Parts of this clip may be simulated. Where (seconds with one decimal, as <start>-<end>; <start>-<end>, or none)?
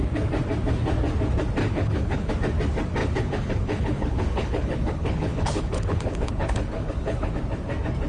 1.6-2.3; 3.0-7.3